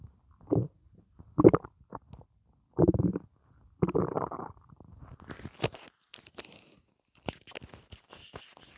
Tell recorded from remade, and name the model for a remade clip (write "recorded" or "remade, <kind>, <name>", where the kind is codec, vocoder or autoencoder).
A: recorded